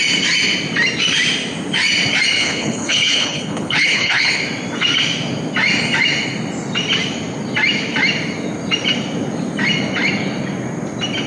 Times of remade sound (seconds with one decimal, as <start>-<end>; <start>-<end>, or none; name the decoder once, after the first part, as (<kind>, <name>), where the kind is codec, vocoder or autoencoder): 2.4-4.4 (codec, HILCodec)